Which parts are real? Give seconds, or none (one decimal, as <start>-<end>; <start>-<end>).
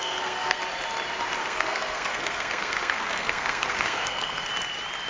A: 0.6-1.4; 4.5-5.1